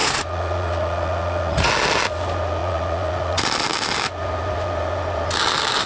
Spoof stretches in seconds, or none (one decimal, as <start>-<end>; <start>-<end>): 0.0-1.7; 2.6-3.4